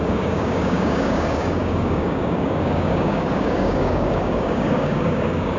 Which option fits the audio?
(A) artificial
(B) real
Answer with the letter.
A